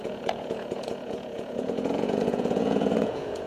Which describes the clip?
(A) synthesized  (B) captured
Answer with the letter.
A